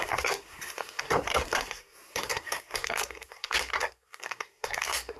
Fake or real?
fake